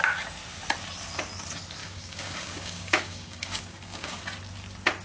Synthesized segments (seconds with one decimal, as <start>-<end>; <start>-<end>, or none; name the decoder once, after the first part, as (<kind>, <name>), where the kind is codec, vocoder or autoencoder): 1.8-4.2 (codec, DAC)